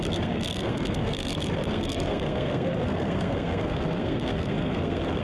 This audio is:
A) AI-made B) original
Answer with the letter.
A